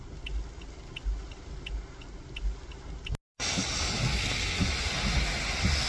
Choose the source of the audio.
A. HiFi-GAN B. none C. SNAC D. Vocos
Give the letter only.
B